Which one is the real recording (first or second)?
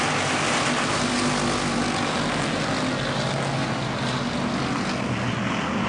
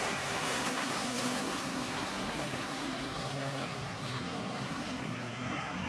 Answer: first